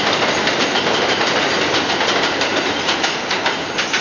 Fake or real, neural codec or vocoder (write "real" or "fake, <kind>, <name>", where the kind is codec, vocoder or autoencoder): real